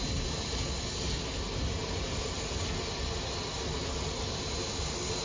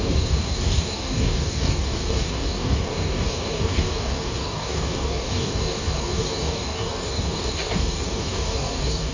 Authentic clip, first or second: first